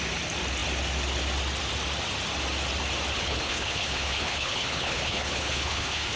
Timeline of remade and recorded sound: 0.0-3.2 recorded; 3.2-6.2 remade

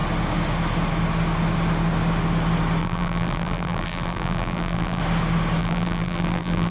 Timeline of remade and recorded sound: 0.0-2.8 recorded; 2.8-5.0 remade; 5.0-5.6 recorded; 5.6-6.7 remade

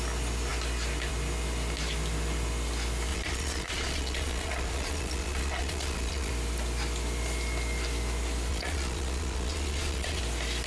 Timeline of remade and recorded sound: 0.0-3.1 recorded; 3.1-6.3 remade; 6.3-8.5 recorded; 8.5-10.2 remade; 10.2-10.7 recorded

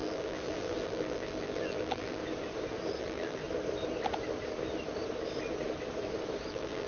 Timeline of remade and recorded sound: 0.0-2.2 remade; 2.2-3.0 recorded; 3.0-3.4 remade; 3.4-6.5 recorded; 6.5-6.9 remade

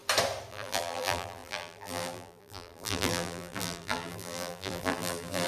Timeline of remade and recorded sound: 0.0-0.5 recorded; 0.5-5.5 remade

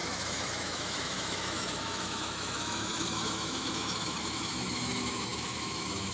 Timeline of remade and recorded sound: 0.0-6.1 remade